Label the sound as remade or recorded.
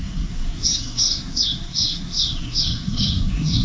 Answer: remade